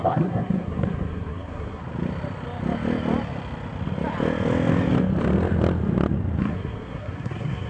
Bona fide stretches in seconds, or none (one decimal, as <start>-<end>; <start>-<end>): 1.8-6.4